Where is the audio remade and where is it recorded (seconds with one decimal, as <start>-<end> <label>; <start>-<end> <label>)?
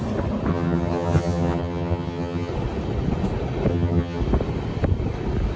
0.0-0.5 recorded; 0.5-2.5 remade; 2.5-3.7 recorded; 3.7-4.2 remade; 4.2-5.6 recorded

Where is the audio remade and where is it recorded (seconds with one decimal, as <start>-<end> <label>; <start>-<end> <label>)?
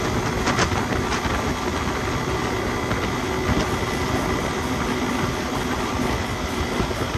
0.0-7.2 recorded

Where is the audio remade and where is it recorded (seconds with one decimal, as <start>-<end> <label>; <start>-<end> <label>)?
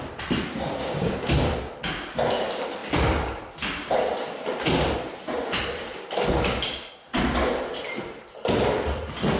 0.0-0.8 recorded; 0.8-1.3 remade; 1.3-9.4 recorded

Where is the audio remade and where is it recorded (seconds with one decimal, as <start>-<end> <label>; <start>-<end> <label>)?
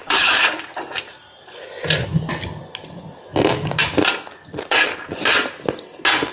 0.0-1.7 remade; 1.7-6.3 recorded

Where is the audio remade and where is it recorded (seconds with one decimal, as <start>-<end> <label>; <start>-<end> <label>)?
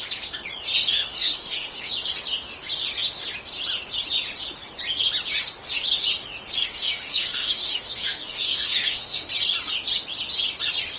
0.0-0.8 recorded; 0.8-1.9 remade; 1.9-6.6 recorded; 6.6-9.3 remade; 9.3-11.0 recorded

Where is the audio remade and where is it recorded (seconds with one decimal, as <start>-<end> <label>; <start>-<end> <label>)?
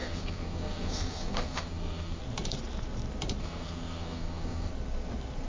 0.0-2.2 remade; 2.2-3.4 recorded; 3.4-4.7 remade; 4.7-5.5 recorded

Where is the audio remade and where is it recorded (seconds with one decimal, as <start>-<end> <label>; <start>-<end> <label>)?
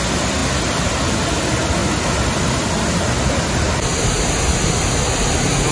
0.0-5.7 recorded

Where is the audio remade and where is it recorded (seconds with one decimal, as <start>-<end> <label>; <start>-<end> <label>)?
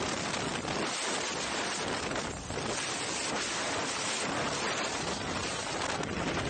0.0-6.5 recorded